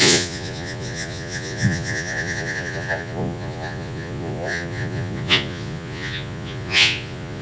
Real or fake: fake